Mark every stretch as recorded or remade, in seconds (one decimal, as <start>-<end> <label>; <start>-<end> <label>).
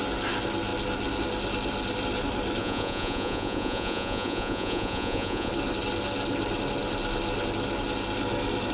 0.0-2.6 recorded; 2.6-5.5 remade; 5.5-8.7 recorded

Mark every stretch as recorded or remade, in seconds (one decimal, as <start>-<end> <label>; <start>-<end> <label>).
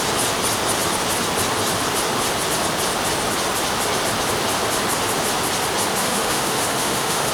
0.0-6.0 recorded; 6.0-7.3 remade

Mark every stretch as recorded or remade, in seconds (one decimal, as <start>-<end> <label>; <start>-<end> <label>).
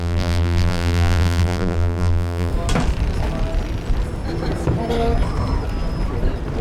0.0-2.5 remade; 2.5-6.6 recorded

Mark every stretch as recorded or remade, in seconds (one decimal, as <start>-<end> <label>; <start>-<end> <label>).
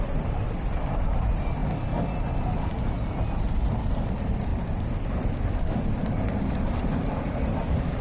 0.0-1.6 remade; 1.6-2.8 recorded; 2.8-4.5 remade; 4.5-5.4 recorded; 5.4-8.0 remade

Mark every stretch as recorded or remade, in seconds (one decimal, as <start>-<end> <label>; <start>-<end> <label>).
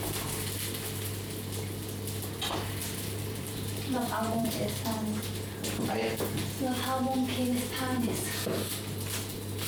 0.0-2.8 recorded; 2.8-4.7 remade; 4.7-9.7 recorded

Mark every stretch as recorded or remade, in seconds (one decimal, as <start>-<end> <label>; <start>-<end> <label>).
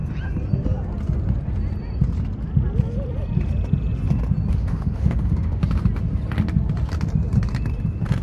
0.0-4.5 recorded; 4.5-5.6 remade; 5.6-8.2 recorded